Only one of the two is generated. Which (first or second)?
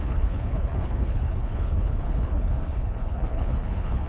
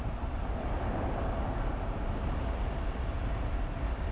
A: first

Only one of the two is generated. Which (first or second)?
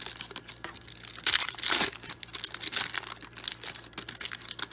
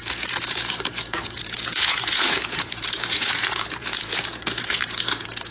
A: second